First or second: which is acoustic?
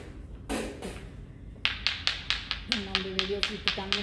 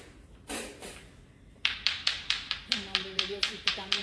first